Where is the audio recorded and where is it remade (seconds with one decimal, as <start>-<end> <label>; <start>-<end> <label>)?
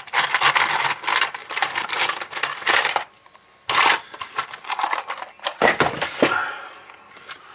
0.0-1.4 recorded; 1.4-2.6 remade; 2.6-7.5 recorded